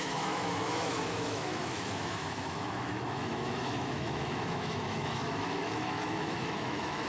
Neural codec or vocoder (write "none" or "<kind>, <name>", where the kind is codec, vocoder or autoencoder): autoencoder, DAC-VAE